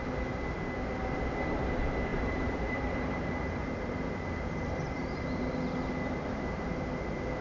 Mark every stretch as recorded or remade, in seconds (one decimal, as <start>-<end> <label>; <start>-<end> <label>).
0.0-2.1 recorded; 2.1-5.4 remade; 5.4-7.4 recorded